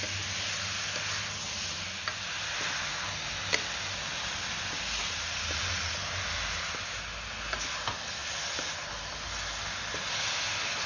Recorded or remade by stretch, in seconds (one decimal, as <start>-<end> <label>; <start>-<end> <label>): 0.0-10.9 recorded